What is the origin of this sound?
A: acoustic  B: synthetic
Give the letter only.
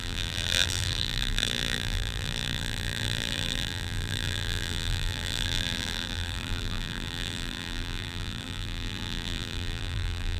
B